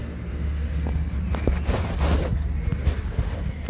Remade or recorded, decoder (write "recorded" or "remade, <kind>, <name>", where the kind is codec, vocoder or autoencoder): recorded